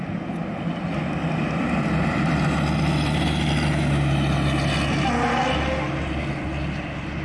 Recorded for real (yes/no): yes